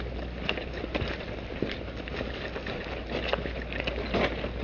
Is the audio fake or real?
real